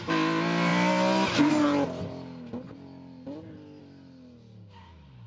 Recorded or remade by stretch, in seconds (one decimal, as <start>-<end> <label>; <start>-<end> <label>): 0.0-5.3 recorded